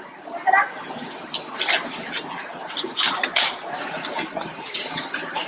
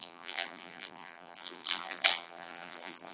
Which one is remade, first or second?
second